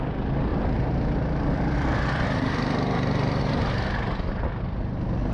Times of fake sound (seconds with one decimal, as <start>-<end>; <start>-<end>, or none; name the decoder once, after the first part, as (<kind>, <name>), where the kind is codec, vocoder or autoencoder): 0.5-3.4 (vocoder, BigVGAN v2)